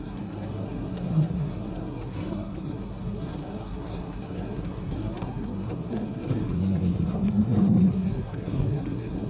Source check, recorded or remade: remade